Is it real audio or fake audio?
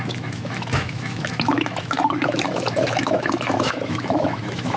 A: fake